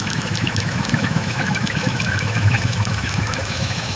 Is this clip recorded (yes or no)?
no